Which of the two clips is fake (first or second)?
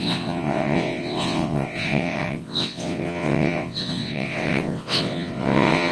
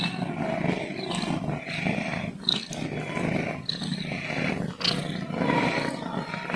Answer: first